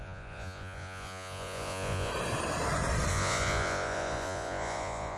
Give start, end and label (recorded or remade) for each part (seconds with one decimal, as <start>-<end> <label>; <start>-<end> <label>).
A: 0.0-2.1 remade; 2.1-3.1 recorded; 3.1-5.2 remade